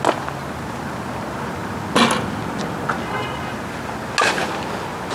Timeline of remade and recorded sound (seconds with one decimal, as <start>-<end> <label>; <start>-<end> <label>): 0.0-5.1 recorded